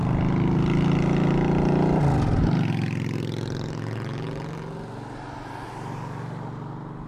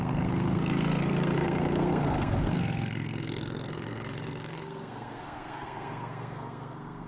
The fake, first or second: second